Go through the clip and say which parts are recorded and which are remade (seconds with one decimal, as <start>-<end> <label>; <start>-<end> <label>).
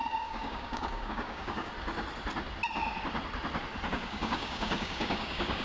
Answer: 0.0-1.7 remade; 1.7-3.9 recorded; 3.9-5.6 remade